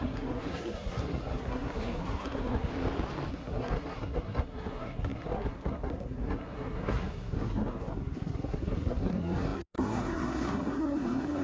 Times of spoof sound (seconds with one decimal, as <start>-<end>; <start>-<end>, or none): 0.0-2.7; 3.3-11.4